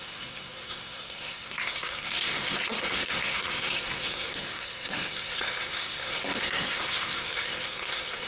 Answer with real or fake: fake